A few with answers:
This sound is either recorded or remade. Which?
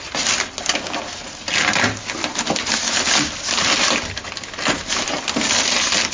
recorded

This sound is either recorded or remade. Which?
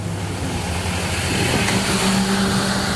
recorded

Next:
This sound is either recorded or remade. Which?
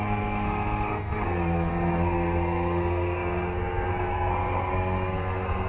remade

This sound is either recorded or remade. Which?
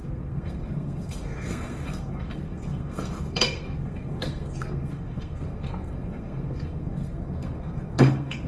remade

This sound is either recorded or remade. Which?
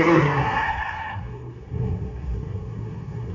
remade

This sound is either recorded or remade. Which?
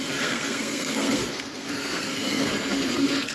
remade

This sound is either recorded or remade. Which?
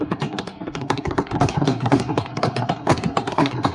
remade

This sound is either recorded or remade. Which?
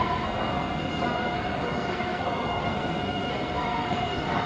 remade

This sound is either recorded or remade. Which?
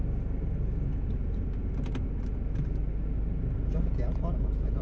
recorded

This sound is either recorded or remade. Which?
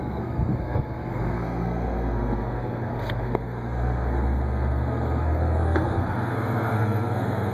remade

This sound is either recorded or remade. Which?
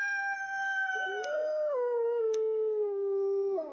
remade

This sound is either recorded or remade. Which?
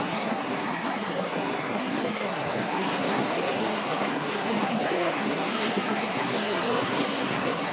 remade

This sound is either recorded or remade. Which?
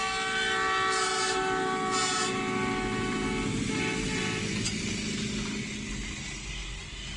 recorded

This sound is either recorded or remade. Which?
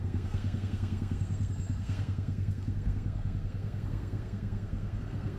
remade